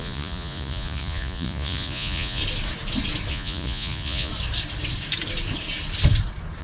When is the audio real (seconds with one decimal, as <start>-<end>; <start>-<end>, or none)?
2.4-3.3; 4.3-6.6